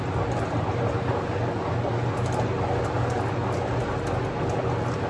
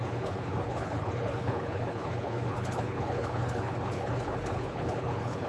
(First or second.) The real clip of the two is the first